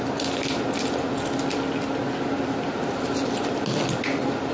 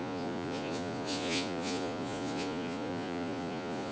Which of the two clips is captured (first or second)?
first